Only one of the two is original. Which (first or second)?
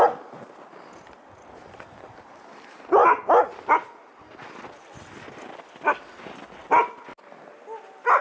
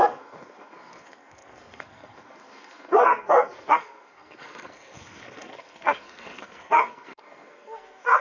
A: first